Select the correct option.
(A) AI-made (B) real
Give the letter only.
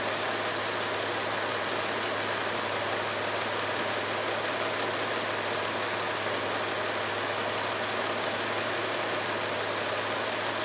B